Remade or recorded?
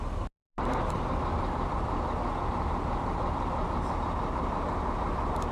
recorded